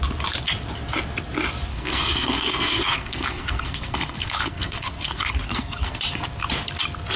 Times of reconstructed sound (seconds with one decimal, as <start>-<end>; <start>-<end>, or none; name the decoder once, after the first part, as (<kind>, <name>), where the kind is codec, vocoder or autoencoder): 1.7-6.0 (codec, SNAC)